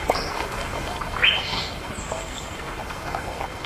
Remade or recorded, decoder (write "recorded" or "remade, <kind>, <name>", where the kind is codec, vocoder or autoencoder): remade, codec, SNAC